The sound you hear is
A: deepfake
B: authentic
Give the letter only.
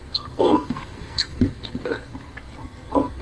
A